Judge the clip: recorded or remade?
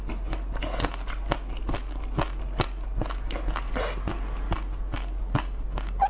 recorded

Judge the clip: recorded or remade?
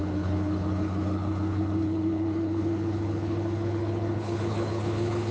remade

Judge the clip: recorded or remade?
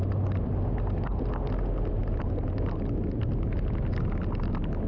recorded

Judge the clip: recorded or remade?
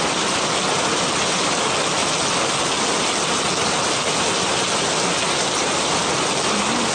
recorded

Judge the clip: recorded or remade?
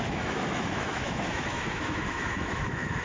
remade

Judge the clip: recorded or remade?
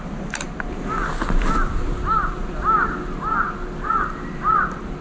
recorded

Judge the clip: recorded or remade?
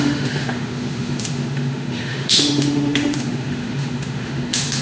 remade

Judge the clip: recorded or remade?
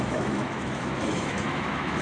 remade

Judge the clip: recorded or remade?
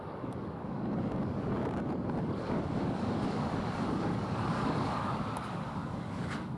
remade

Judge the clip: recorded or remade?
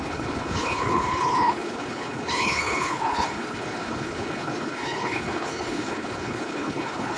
remade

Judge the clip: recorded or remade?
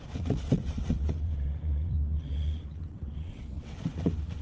remade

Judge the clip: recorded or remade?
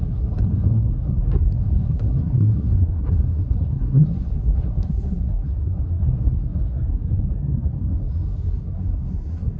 remade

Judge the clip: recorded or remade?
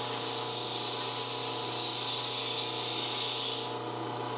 recorded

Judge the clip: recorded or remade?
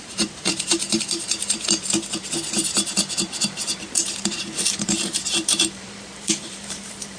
remade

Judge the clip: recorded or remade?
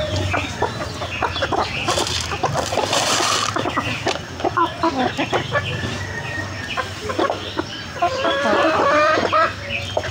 recorded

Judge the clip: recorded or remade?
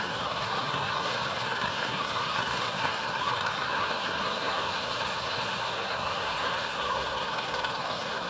remade